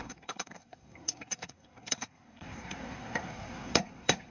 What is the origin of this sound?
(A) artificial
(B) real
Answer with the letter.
A